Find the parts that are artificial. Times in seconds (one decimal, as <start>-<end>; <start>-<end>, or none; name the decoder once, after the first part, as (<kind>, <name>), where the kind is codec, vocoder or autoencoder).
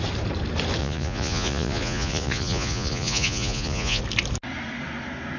0.8-4.0 (vocoder, Vocos)